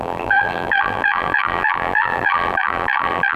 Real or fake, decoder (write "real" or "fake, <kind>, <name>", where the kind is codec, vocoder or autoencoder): fake, vocoder, BigVGAN v2